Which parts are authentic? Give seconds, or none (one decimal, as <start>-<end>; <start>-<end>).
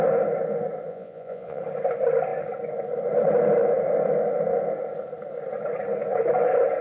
0.0-0.9; 1.6-6.8